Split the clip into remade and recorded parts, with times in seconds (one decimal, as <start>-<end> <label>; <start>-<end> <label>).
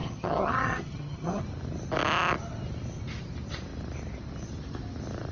0.0-1.4 remade; 1.4-5.3 recorded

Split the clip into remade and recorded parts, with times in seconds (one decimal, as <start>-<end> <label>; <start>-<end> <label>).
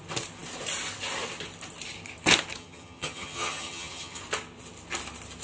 0.0-2.6 recorded; 2.6-4.2 remade; 4.2-5.4 recorded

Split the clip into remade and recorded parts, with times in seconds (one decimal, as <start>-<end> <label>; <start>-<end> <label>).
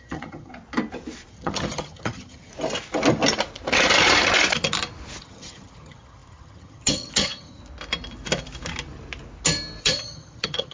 0.0-0.5 remade; 0.5-1.3 recorded; 1.3-2.5 remade; 2.5-5.2 recorded; 5.2-7.6 remade; 7.6-9.8 recorded; 9.8-10.7 remade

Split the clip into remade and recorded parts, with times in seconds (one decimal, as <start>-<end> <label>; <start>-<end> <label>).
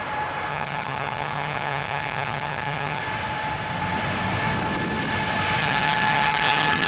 0.0-0.5 recorded; 0.5-3.0 remade; 3.0-5.6 recorded; 5.6-6.9 remade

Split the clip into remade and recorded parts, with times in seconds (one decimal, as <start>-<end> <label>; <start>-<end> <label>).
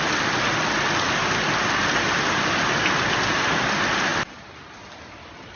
0.0-5.6 recorded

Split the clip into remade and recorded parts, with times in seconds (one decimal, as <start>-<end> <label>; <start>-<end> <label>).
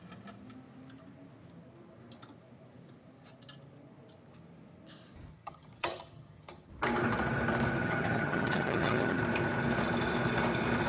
0.0-5.3 recorded; 5.3-6.7 remade; 6.7-7.8 recorded; 7.8-9.2 remade; 9.2-10.9 recorded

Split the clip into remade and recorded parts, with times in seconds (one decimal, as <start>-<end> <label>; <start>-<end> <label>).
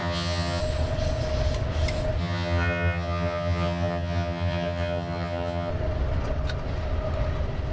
0.0-0.6 remade; 0.6-2.2 recorded; 2.2-5.7 remade; 5.7-7.7 recorded